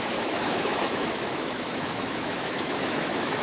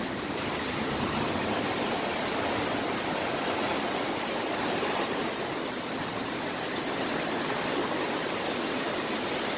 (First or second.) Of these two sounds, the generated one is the first